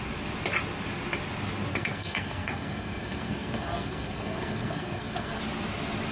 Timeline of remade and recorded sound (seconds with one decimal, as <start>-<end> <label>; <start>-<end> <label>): 0.0-1.7 recorded; 1.7-5.4 remade; 5.4-6.1 recorded